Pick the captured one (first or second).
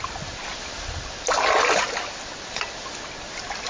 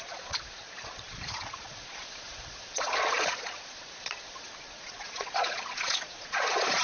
first